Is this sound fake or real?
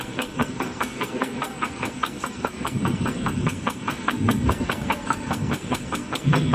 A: fake